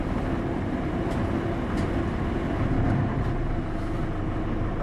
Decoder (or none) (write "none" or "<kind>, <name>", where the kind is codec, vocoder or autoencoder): none